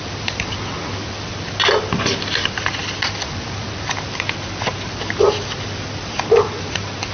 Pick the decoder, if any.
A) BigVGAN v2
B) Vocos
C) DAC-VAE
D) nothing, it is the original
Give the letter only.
D